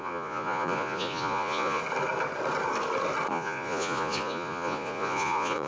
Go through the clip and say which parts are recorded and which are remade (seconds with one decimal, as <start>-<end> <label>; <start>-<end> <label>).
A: 0.0-1.8 remade; 1.8-3.3 recorded; 3.3-5.7 remade